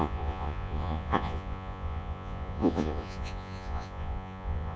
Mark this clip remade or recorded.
remade